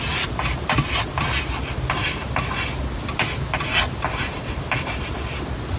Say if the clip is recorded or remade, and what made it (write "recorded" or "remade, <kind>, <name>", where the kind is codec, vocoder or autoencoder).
recorded